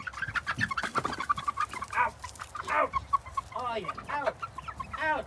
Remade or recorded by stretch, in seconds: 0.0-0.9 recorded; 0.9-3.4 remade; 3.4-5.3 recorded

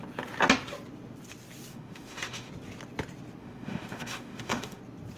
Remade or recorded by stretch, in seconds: 0.0-1.7 recorded; 1.7-2.5 remade; 2.5-3.4 recorded; 3.4-4.8 remade; 4.8-5.2 recorded